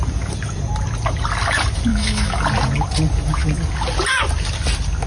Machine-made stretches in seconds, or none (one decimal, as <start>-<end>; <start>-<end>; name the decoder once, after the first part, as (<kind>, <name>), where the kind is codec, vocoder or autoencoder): 1.9-2.4 (autoencoder, DAC-VAE)